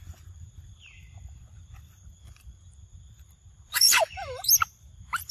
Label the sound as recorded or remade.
remade